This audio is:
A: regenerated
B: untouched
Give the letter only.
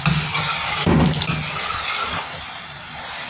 B